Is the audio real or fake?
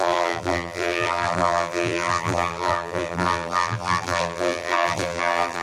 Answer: fake